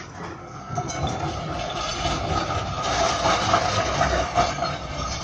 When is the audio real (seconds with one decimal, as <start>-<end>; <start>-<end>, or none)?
0.0-0.4; 0.9-5.2

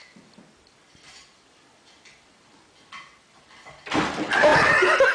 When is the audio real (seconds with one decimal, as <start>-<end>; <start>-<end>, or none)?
0.0-5.1

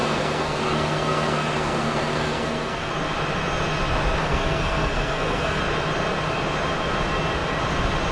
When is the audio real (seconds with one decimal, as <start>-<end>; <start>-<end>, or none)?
2.9-4.2; 5.6-8.1

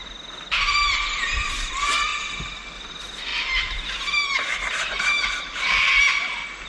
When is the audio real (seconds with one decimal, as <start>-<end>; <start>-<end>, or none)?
0.0-6.7

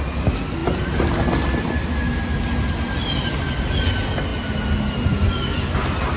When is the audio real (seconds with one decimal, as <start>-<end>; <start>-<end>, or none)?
0.0-6.2

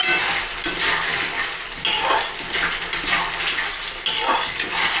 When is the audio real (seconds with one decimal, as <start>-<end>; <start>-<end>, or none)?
0.0-5.0

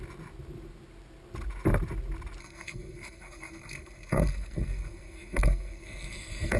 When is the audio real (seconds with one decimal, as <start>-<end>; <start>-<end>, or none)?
0.0-2.4